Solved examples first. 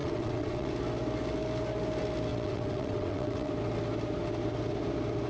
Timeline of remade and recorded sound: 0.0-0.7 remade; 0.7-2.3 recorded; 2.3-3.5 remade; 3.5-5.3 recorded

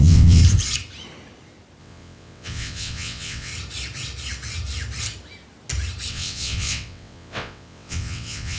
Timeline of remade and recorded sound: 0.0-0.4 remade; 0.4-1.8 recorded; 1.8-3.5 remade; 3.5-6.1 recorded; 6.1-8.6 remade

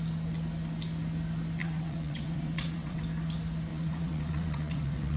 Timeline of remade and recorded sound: 0.0-1.6 recorded; 1.6-3.0 remade; 3.0-3.7 recorded; 3.7-5.2 remade

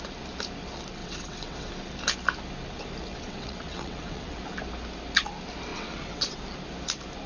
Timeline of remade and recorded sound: 0.0-1.0 recorded; 1.0-1.7 remade; 1.7-3.1 recorded; 3.1-4.4 remade; 4.4-5.7 recorded; 5.7-6.4 remade; 6.4-7.3 recorded

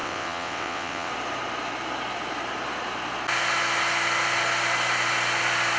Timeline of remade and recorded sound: 0.0-1.1 remade; 1.1-5.8 recorded